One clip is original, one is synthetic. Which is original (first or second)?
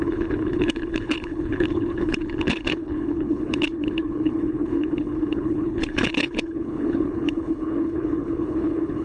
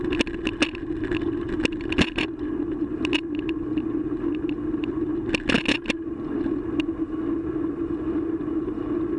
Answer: second